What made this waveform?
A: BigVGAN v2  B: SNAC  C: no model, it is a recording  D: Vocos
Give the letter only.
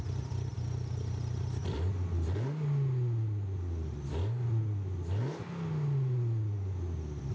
C